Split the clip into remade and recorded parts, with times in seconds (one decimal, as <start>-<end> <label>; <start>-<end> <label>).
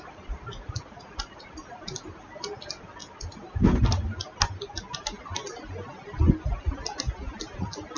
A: 0.0-3.0 remade; 3.0-7.3 recorded; 7.3-8.0 remade